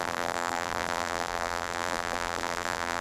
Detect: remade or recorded remade